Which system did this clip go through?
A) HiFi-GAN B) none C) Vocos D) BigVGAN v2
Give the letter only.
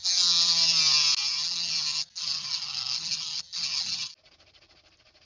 B